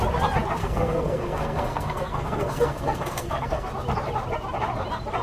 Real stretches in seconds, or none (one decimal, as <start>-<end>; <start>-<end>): 0.0-0.6; 3.7-5.2